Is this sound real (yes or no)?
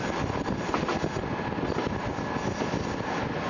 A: yes